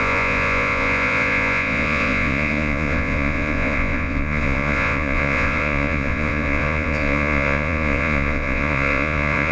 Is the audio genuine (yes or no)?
no